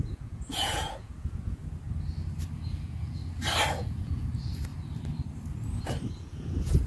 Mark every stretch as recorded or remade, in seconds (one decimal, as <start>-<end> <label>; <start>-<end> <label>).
0.0-1.6 remade; 1.6-2.8 recorded; 2.8-3.2 remade; 3.2-3.7 recorded; 3.7-4.7 remade; 4.7-6.1 recorded; 6.1-6.9 remade